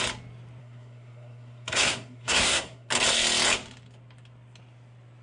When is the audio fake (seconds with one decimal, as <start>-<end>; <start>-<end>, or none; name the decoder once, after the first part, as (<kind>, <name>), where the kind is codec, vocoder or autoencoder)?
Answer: 0.6-2.9 (codec, SNAC)